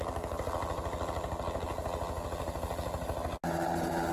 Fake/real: real